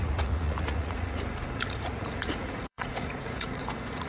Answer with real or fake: fake